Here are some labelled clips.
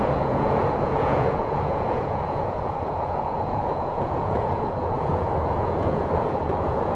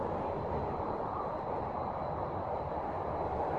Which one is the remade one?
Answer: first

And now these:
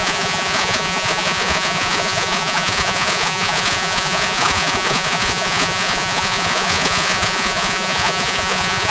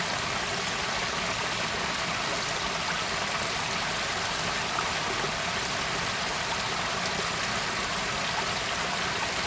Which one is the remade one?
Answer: first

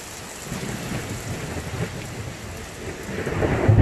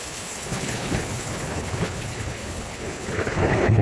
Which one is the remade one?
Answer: second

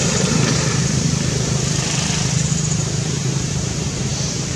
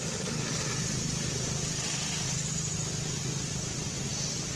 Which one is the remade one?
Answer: first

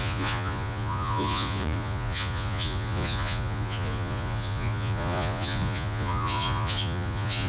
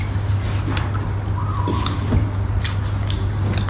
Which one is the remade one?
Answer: first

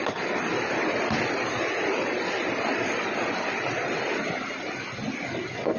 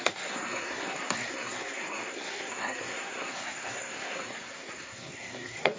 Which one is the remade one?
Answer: second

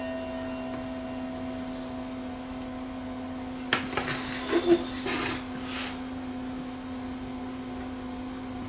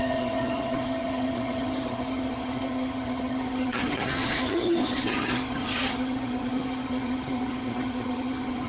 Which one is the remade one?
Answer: second